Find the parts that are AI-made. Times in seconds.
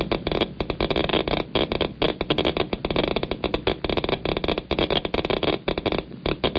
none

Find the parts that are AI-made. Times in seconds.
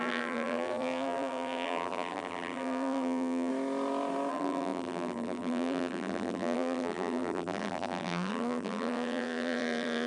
0.0-3.5 (vocoder, BigVGAN v2); 4.3-10.1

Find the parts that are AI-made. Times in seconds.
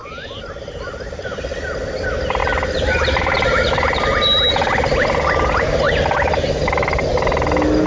none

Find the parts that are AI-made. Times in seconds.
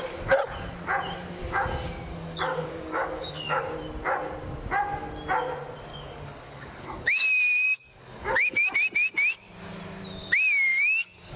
2.1-3.6 (codec, DAC); 5.9-8.7; 10.2-11.4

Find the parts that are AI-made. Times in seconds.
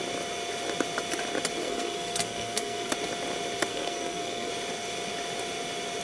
1.6-2.9 (codec, SNAC); 3.7-4.5